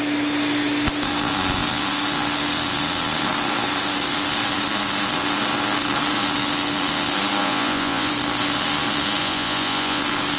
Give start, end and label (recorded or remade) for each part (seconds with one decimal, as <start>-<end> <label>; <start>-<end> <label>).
0.0-7.4 recorded; 7.4-8.1 remade; 8.1-9.2 recorded; 9.2-10.0 remade; 10.0-10.4 recorded